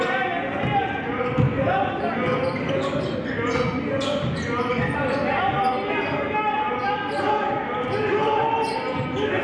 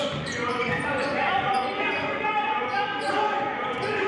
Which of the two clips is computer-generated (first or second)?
second